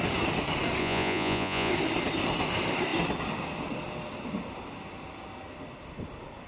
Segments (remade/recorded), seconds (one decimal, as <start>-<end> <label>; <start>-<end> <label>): 0.0-0.8 recorded; 0.8-1.7 remade; 1.7-6.5 recorded